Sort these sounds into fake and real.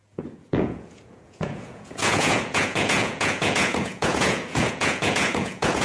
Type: fake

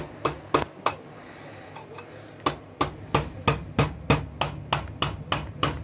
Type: real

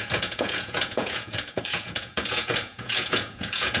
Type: fake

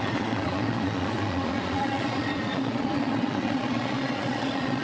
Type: fake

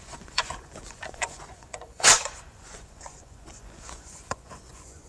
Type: fake